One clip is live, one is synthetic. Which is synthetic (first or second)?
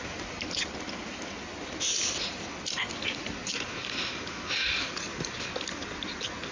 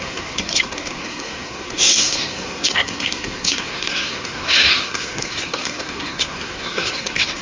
second